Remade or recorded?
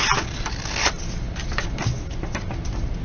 recorded